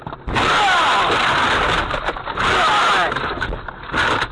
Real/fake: real